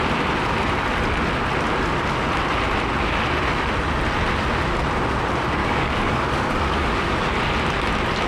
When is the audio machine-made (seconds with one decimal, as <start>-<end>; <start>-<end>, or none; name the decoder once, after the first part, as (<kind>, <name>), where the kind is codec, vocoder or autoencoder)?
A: 5.6-7.4 (codec, DAC)